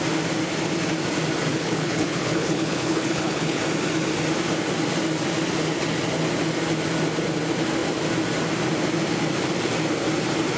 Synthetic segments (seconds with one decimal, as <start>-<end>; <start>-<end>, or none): 1.5-3.6